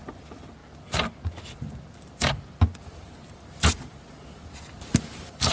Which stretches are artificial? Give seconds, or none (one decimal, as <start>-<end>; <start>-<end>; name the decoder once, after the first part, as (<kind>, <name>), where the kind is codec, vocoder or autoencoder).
none